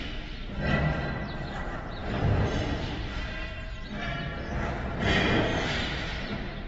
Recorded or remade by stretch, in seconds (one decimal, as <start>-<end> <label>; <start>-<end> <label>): 0.0-2.0 recorded; 2.0-4.3 remade; 4.3-6.7 recorded